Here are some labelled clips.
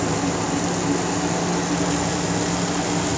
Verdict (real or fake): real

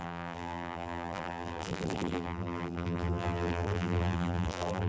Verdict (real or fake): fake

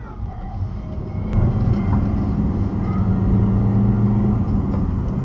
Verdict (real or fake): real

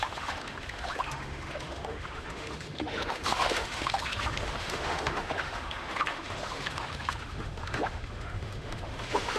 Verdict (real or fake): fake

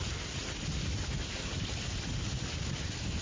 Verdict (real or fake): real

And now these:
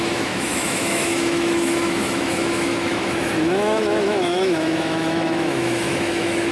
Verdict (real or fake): fake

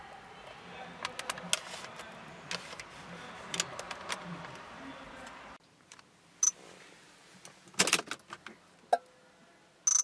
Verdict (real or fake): real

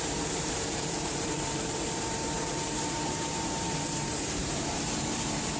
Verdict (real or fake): fake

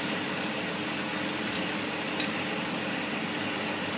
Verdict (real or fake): real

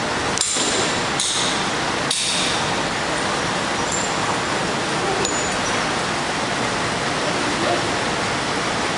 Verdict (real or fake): real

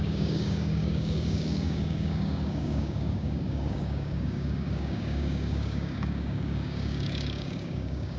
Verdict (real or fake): fake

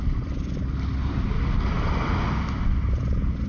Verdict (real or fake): real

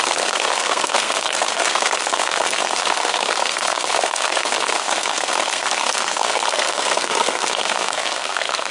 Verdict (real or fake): fake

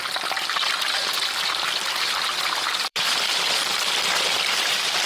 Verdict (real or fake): fake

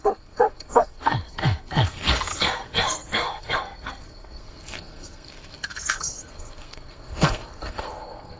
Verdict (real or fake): fake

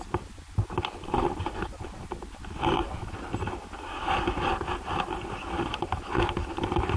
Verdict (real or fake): real